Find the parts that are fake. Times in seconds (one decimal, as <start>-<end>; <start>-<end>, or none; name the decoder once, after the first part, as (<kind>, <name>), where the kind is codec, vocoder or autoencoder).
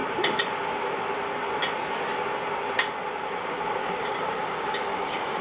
3.8-5.4 (codec, DAC)